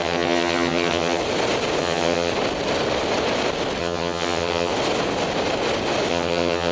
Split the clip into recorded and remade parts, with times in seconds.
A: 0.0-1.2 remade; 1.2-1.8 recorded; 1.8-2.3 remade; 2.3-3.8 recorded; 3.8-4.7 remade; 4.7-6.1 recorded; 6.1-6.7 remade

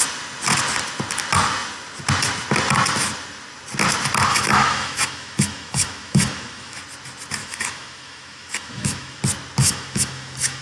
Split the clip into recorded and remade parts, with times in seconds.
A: 0.0-4.3 recorded; 4.3-6.8 remade; 6.8-7.4 recorded; 7.4-9.2 remade; 9.2-9.6 recorded; 9.6-10.6 remade

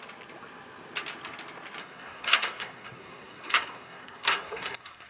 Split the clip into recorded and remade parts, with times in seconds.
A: 0.0-1.8 recorded; 1.8-5.1 remade

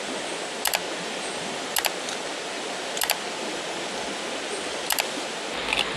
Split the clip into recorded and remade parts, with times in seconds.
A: 0.0-6.0 recorded

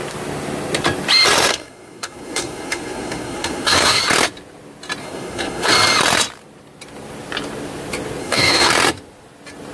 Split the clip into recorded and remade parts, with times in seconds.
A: 0.0-1.5 recorded; 1.5-4.0 remade; 4.0-5.0 recorded; 5.0-5.7 remade; 5.7-8.2 recorded; 8.2-8.7 remade; 8.7-9.7 recorded

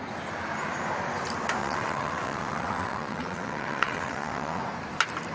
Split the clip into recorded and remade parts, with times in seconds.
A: 0.0-1.6 recorded; 1.6-4.6 remade; 4.6-5.3 recorded

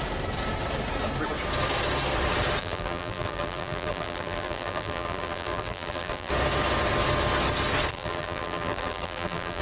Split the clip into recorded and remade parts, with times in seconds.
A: 0.0-2.6 recorded; 2.6-6.3 remade; 6.3-7.9 recorded; 7.9-9.6 remade

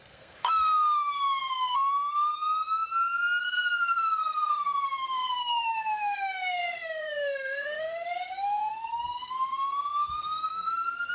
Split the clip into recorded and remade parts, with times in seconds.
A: 0.0-2.3 remade; 2.3-3.4 recorded; 3.4-11.1 remade